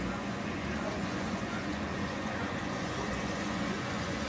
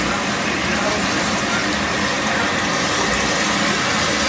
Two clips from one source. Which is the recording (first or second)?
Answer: second